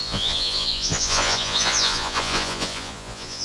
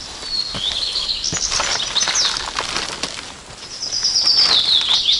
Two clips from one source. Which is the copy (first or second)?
first